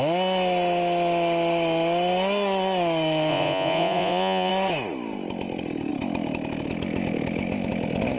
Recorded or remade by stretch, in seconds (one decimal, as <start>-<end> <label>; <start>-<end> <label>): 0.0-3.3 recorded; 3.3-4.5 remade; 4.5-8.2 recorded